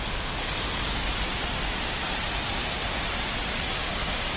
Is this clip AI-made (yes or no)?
no